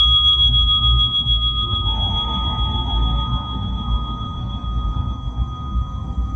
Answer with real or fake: fake